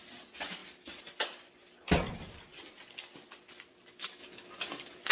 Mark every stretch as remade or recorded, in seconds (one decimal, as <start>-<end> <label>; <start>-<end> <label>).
0.0-5.1 recorded